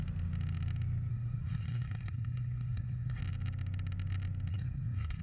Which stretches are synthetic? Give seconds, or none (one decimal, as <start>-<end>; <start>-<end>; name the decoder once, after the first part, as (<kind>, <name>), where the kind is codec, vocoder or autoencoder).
1.1-3.2 (codec, SNAC); 4.5-5.2